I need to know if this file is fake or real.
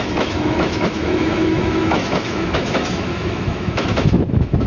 fake